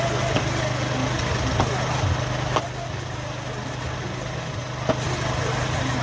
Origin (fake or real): real